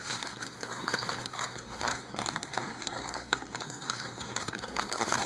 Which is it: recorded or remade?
remade